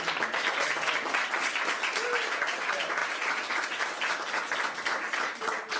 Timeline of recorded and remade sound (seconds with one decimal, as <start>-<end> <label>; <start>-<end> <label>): 0.0-5.8 recorded